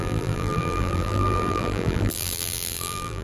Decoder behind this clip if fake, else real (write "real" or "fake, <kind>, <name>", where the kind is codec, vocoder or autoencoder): fake, vocoder, BigVGAN v2